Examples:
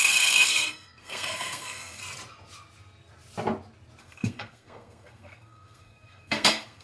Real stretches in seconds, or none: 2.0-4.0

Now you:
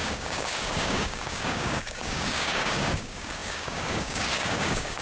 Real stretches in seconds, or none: none